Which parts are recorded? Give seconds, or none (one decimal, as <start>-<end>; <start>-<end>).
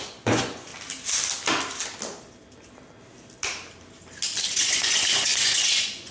0.7-4.4